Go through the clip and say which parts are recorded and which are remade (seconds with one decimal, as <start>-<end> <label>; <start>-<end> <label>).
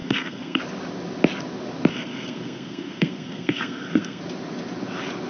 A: 0.0-0.6 remade; 0.6-1.9 recorded; 1.9-4.2 remade; 4.2-5.3 recorded